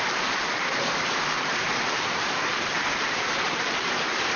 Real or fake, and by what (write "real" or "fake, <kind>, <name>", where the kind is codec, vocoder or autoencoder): fake, vocoder, BigVGAN v2